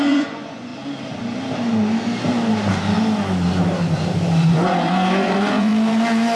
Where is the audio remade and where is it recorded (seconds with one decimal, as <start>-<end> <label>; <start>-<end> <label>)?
0.0-0.7 remade; 0.7-4.5 recorded; 4.5-5.7 remade; 5.7-6.4 recorded